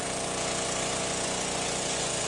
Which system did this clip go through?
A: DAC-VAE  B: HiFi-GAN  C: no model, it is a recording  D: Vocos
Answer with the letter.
D